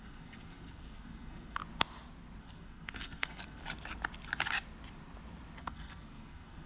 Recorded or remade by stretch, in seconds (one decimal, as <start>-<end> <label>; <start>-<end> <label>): 0.0-1.6 remade; 1.6-2.4 recorded; 2.4-3.6 remade; 3.6-5.6 recorded; 5.6-6.7 remade